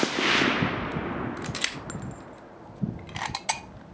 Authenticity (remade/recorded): recorded